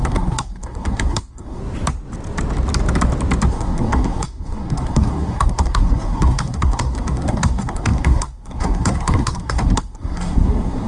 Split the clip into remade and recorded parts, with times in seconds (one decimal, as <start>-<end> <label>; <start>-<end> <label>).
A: 0.0-1.6 remade; 1.6-3.5 recorded; 3.5-10.9 remade